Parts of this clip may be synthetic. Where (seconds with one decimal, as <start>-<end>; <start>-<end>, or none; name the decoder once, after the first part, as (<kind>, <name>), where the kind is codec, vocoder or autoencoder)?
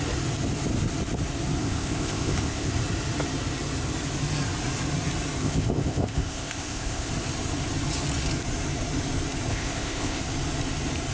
1.6-2.7 (codec, ZipCodec); 5.4-7.1; 9.5-10.2